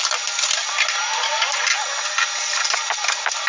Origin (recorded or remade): recorded